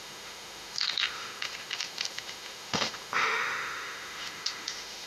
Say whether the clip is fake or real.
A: fake